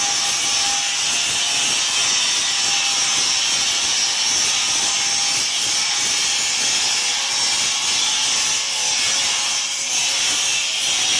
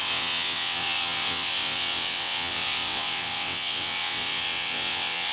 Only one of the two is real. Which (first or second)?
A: first